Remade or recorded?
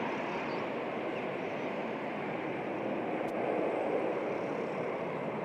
recorded